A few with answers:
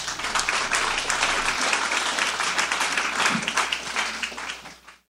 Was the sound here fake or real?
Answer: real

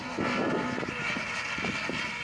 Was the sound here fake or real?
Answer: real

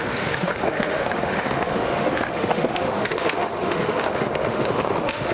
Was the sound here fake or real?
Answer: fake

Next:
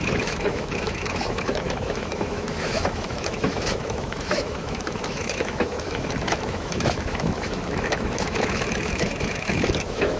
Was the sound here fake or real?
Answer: fake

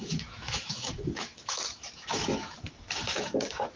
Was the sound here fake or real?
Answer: fake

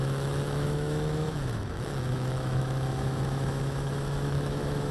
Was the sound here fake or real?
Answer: fake